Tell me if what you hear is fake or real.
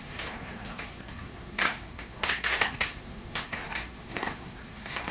fake